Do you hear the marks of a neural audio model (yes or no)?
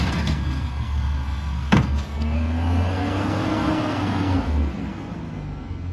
yes